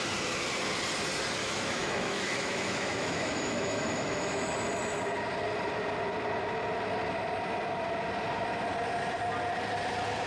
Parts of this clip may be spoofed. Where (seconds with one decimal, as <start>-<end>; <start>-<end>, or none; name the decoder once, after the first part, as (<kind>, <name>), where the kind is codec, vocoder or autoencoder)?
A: 1.4-4.5 (autoencoder, DAC-VAE)